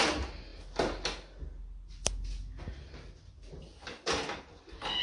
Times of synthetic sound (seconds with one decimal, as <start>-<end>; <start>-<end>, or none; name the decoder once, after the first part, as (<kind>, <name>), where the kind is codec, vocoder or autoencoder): none